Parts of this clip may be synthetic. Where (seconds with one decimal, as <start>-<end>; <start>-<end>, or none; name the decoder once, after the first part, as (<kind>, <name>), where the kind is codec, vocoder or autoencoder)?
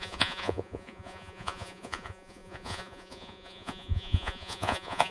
0.0-5.1 (vocoder, Vocos)